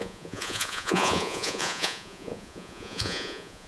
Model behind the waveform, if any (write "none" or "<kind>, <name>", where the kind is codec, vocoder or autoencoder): vocoder, Vocos